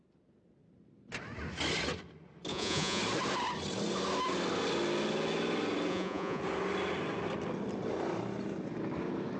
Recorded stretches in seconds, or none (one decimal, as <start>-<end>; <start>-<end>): 0.0-2.5; 3.0-5.9; 6.4-9.4